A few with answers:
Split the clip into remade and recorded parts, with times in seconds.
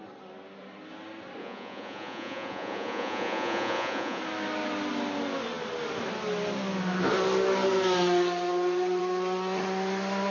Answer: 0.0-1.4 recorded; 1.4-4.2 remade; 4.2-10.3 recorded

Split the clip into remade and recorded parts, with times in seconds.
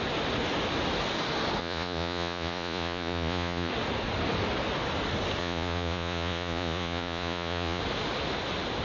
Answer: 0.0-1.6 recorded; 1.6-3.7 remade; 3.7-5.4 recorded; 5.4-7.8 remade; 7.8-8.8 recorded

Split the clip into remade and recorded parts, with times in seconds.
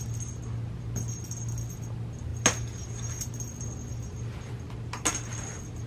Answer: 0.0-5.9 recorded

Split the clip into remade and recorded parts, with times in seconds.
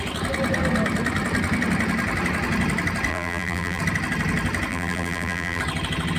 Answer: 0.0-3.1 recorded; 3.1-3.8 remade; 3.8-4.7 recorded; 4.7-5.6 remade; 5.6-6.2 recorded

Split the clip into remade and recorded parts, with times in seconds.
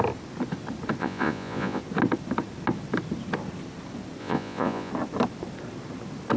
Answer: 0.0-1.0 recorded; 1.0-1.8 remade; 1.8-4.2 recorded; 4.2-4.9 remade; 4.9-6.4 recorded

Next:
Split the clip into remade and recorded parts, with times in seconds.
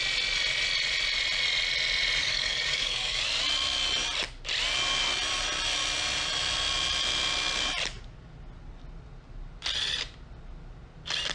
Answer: 0.0-2.2 recorded; 2.2-3.2 remade; 3.2-11.3 recorded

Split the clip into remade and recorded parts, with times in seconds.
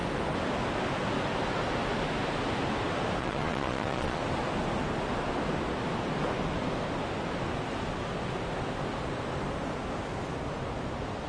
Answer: 0.0-3.2 recorded; 3.2-4.2 remade; 4.2-11.3 recorded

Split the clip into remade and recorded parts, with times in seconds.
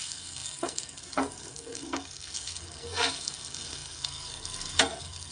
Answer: 0.0-5.3 remade